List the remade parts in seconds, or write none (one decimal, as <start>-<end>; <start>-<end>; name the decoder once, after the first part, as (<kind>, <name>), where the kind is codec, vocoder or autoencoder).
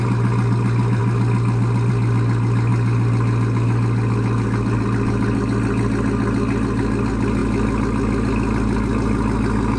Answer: none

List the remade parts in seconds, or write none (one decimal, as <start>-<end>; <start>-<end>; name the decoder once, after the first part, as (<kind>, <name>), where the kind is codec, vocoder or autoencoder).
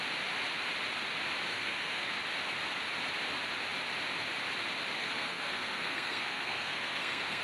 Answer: 1.5-2.1 (codec, SNAC); 5.0-7.4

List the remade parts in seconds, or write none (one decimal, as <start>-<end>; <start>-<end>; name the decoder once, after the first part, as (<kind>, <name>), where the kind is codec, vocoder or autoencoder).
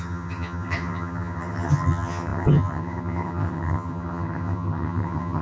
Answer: 0.0-5.4 (vocoder, HiFi-GAN)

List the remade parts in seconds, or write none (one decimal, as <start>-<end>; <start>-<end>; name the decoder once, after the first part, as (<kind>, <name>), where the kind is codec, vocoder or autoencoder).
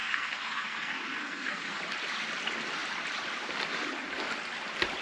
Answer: 0.0-1.8 (codec, SNAC)